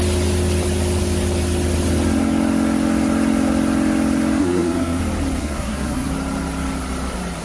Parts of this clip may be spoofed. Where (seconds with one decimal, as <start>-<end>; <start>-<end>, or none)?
4.4-5.0; 5.4-6.1